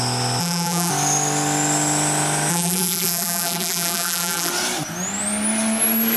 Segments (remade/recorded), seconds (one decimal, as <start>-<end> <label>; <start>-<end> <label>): 0.0-0.4 recorded; 0.4-0.9 remade; 0.9-2.5 recorded; 2.5-4.5 remade; 4.5-6.2 recorded